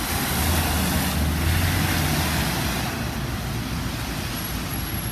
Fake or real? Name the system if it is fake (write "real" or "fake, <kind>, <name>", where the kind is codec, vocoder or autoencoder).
real